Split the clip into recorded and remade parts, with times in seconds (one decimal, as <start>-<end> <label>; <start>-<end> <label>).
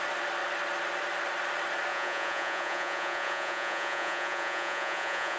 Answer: 0.0-1.9 recorded; 1.9-5.4 remade